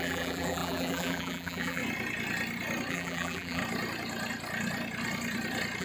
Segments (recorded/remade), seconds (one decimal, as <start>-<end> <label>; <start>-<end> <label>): 0.0-1.8 remade; 1.8-2.9 recorded; 2.9-3.6 remade; 3.6-5.8 recorded